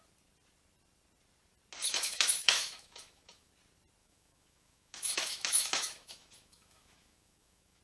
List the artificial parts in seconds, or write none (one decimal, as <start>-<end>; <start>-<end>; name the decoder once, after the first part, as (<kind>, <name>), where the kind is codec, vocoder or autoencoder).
1.8-3.5 (autoencoder, DAC-VAE); 4.0-7.8